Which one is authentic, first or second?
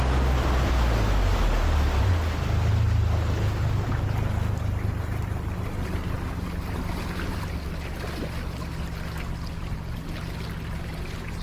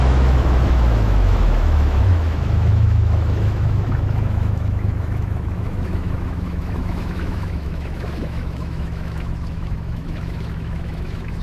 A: first